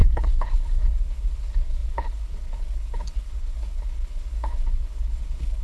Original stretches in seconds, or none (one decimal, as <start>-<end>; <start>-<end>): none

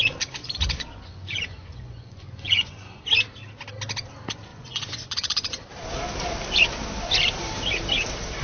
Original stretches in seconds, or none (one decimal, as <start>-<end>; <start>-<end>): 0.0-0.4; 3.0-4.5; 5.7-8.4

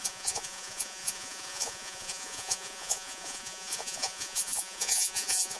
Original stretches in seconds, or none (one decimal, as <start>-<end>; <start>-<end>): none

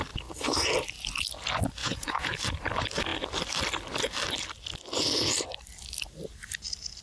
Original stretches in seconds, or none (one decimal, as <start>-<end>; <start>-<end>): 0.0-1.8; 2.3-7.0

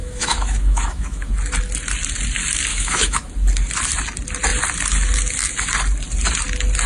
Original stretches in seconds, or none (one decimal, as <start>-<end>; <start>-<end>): 1.3-2.7; 3.3-6.9

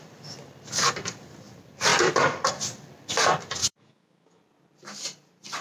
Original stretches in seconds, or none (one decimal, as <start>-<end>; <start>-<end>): 0.0-3.6; 4.4-5.6

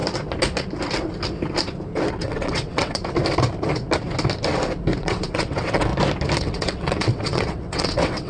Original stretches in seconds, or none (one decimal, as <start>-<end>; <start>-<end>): 0.0-2.1; 3.0-5.0; 5.9-6.4